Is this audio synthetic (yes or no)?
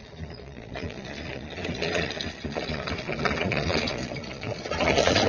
yes